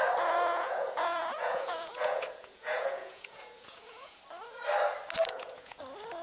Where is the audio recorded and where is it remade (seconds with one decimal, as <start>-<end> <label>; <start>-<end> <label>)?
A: 0.0-0.5 recorded; 0.5-4.2 remade; 4.2-5.3 recorded; 5.3-5.8 remade; 5.8-6.2 recorded